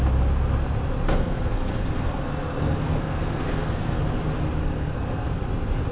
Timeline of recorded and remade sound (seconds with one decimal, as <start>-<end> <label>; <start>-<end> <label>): 0.0-1.1 recorded; 1.1-4.0 remade; 4.0-4.6 recorded; 4.6-5.4 remade; 5.4-5.9 recorded